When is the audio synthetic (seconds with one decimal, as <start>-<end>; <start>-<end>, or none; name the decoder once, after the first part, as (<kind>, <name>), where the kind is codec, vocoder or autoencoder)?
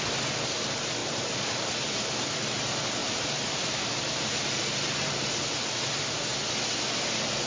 1.0-1.7 (vocoder, BigVGAN v2); 3.0-5.3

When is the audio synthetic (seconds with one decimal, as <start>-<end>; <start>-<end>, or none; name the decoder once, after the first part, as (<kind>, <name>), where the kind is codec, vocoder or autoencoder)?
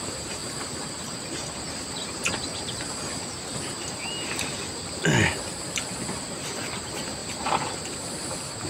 none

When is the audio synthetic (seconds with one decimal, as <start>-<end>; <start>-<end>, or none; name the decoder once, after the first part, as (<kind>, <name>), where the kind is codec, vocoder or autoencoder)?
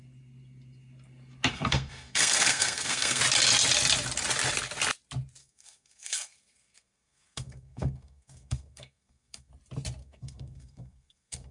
1.5-3.2 (codec, SNAC); 5.4-9.5; 10.0-11.5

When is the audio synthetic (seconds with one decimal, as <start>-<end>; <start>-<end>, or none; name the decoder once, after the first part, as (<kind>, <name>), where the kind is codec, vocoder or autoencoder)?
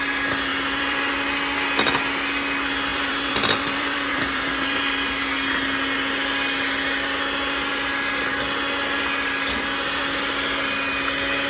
0.5-1.1 (vocoder, BigVGAN v2); 2.9-5.1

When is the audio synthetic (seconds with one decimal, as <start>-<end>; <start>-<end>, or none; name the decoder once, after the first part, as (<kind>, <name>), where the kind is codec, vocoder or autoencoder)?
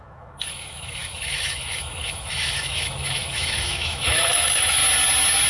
0.0-4.8 (autoencoder, DAC-VAE)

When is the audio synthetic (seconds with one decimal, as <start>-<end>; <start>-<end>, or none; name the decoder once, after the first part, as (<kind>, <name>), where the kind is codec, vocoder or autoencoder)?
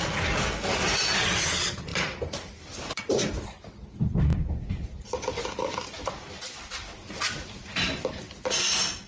1.9-3.0 (vocoder, BigVGAN v2); 4.3-6.9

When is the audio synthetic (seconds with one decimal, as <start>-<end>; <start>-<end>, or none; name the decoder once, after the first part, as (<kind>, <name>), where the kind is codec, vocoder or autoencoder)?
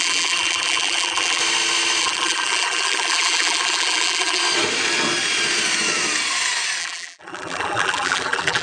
0.0-1.4 (vocoder, BigVGAN v2); 2.0-4.4; 6.8-8.6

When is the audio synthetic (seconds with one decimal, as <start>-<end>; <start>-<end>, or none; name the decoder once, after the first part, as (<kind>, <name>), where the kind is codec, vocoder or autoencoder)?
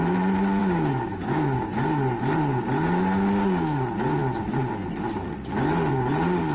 0.6-1.7 (codec, DAC)